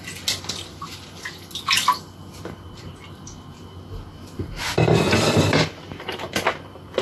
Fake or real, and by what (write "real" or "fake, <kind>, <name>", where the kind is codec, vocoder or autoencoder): real